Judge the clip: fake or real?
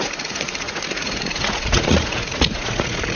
fake